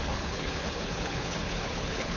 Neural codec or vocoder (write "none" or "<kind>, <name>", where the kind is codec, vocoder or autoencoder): codec, HILCodec